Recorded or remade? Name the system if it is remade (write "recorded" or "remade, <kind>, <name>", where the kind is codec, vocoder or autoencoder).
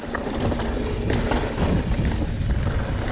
recorded